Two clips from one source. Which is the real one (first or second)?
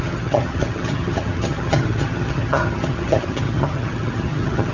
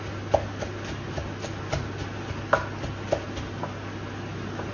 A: second